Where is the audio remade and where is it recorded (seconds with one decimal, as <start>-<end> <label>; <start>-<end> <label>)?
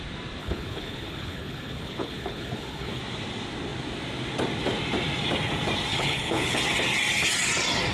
0.0-0.4 recorded; 0.4-3.0 remade; 3.0-5.9 recorded; 5.9-6.6 remade; 6.6-7.9 recorded